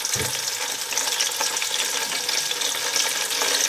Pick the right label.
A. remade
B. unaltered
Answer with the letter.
B